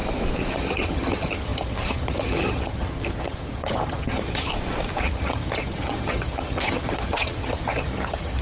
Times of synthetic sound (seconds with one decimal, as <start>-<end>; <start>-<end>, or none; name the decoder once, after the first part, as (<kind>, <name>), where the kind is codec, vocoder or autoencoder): 0.5-4.5 (vocoder, HiFi-GAN); 5.0-8.4